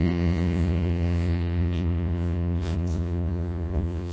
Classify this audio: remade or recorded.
remade